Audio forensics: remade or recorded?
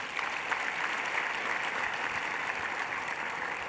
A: recorded